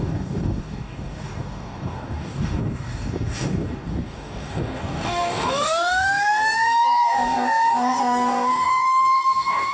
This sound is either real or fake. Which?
fake